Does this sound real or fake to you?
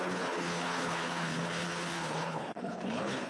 fake